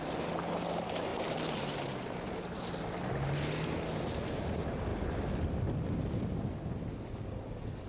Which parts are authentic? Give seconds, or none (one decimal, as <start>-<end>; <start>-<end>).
0.0-1.1; 2.7-7.9